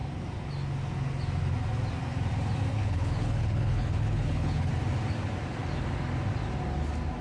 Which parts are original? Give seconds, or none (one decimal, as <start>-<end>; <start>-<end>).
0.0-2.7; 4.7-7.2